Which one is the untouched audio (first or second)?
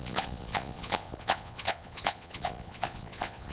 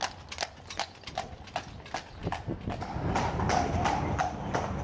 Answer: second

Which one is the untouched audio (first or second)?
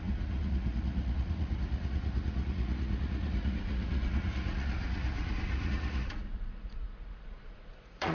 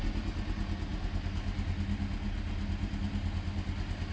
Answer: second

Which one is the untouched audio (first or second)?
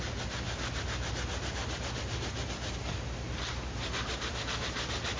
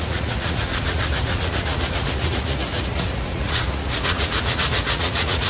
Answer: first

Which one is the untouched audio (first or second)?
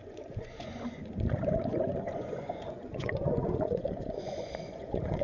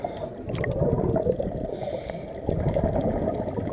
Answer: second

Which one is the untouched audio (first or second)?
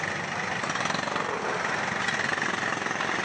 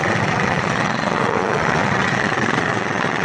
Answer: first